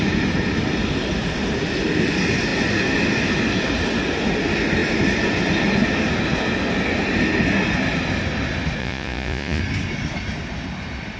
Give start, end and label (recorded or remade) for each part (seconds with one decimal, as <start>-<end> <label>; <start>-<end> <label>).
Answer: 0.0-8.8 recorded; 8.8-9.6 remade; 9.6-11.2 recorded